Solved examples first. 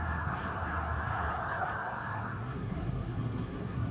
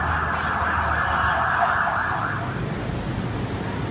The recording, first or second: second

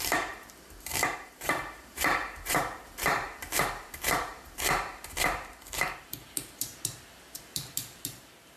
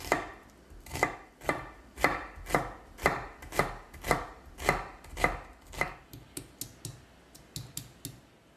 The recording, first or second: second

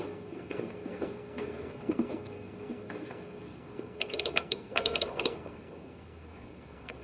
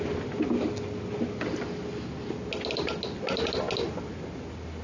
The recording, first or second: second